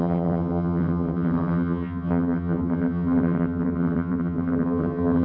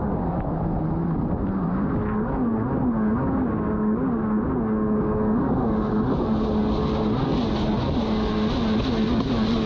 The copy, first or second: first